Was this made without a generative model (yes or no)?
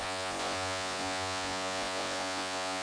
no